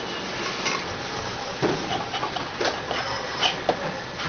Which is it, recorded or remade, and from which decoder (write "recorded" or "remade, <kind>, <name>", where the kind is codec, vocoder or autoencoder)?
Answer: recorded